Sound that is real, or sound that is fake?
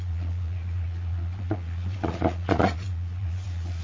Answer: fake